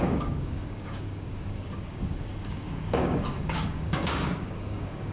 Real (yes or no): no